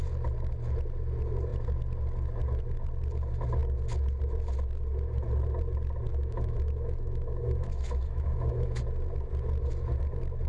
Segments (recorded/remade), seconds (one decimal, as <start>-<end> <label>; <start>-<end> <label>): 0.0-6.1 recorded; 6.1-8.8 remade; 8.8-10.5 recorded